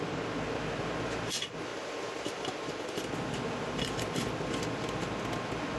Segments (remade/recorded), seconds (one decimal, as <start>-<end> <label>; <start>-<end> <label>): 0.0-5.8 recorded